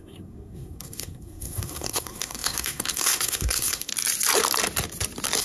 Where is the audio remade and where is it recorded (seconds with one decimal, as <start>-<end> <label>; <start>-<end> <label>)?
0.0-3.9 remade; 3.9-5.4 recorded